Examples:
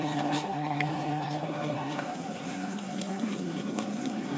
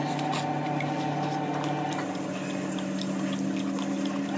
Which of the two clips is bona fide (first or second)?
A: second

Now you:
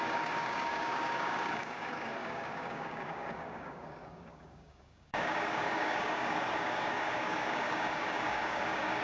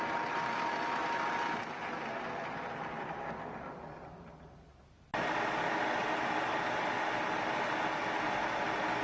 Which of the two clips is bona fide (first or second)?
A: second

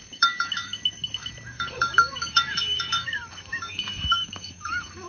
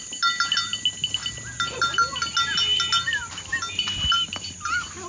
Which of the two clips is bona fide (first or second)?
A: second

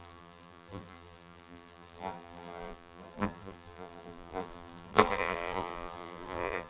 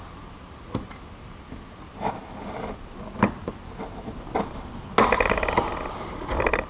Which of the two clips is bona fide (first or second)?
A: second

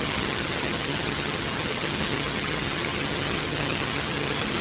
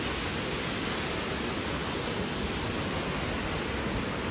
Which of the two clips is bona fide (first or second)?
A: second